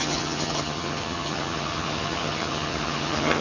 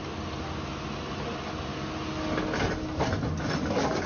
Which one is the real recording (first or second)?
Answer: second